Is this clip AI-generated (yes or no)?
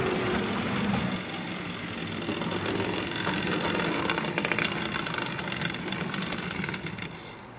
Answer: no